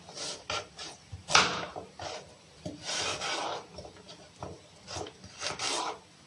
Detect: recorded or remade recorded